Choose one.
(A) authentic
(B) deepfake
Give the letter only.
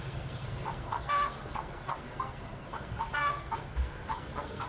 B